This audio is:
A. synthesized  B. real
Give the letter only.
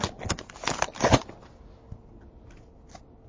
B